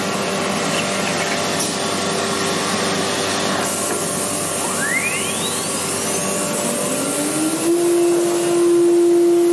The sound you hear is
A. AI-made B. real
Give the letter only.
B